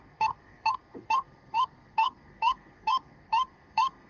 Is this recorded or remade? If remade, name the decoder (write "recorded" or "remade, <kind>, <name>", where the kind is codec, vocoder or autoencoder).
remade, codec, SNAC